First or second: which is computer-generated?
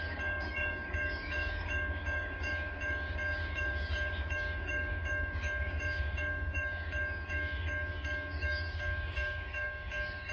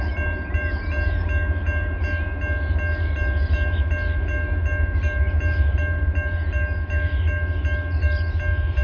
first